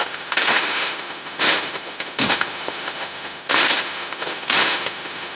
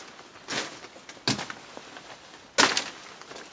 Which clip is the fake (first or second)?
first